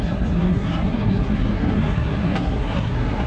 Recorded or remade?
remade